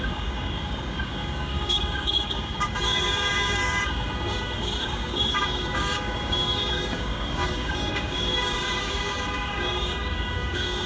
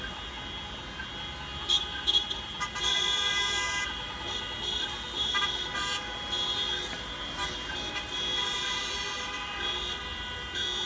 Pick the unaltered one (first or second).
second